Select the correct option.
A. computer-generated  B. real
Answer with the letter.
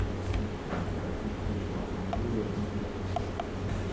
B